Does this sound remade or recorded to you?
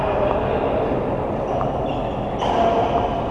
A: recorded